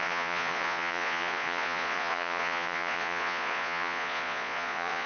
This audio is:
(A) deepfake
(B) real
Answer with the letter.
A